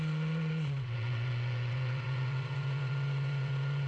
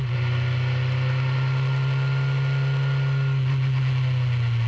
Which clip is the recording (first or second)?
second